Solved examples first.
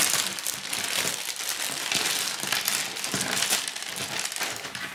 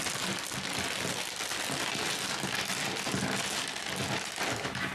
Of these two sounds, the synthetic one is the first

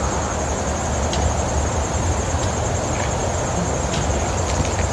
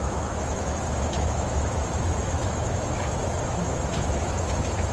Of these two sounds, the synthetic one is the second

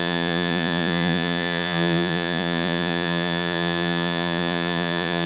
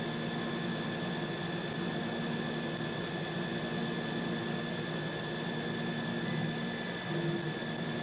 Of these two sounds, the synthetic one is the first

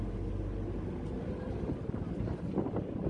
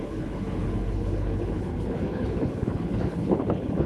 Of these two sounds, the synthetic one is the second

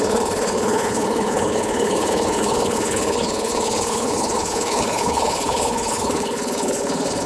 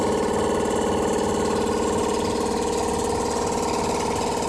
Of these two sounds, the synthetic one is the first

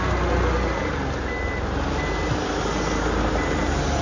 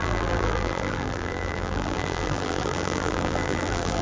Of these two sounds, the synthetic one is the second